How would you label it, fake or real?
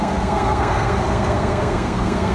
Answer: fake